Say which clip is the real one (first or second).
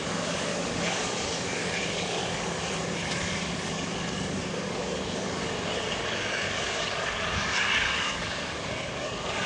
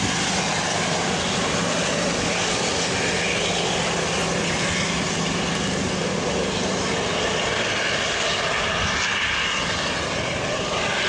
second